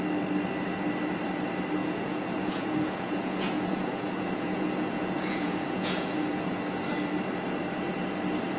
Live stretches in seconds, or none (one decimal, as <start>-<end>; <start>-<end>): 0.0-1.8; 6.6-8.6